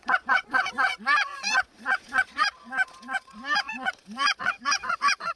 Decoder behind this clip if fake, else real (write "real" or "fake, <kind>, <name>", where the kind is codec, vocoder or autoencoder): fake, vocoder, Vocos